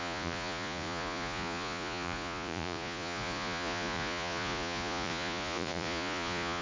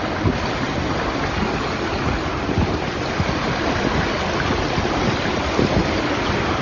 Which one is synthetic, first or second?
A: first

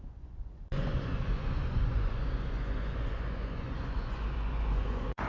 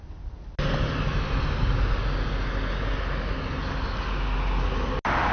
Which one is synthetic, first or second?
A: first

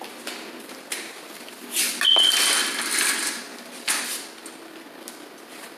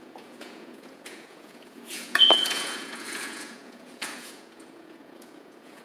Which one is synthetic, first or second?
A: second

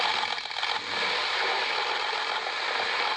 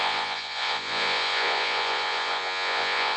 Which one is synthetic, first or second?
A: second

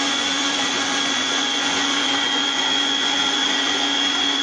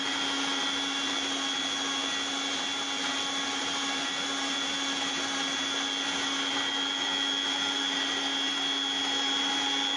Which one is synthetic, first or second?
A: first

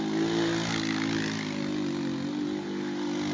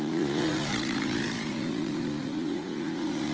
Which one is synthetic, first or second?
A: second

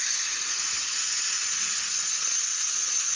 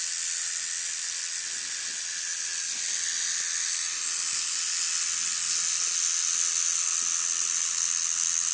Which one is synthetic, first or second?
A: first